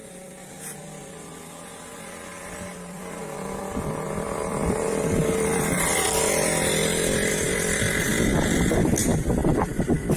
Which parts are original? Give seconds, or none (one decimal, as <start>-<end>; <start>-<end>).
0.0-0.8; 3.2-3.6; 7.8-10.2